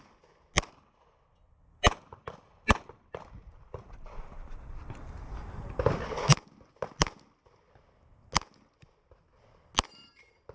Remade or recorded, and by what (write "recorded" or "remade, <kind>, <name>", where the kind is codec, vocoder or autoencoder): recorded